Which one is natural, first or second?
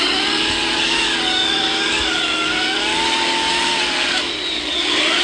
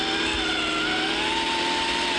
second